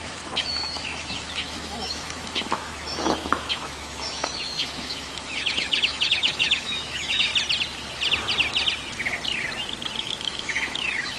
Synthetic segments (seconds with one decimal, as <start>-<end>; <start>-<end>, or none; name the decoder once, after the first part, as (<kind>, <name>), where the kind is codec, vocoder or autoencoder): 0.0-7.3 (autoencoder, DAC-VAE); 10.0-11.2